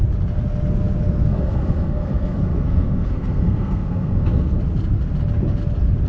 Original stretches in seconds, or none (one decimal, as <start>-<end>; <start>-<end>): 0.0-1.3; 4.6-6.1